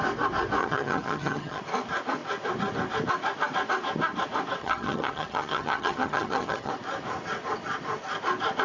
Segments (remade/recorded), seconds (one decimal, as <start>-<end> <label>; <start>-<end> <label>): 0.0-0.6 recorded; 0.6-1.6 remade; 1.6-4.6 recorded; 4.6-6.7 remade; 6.7-8.6 recorded